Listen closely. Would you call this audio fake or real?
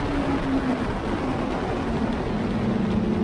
real